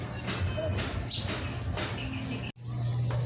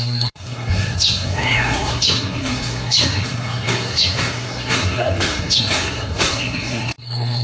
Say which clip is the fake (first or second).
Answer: second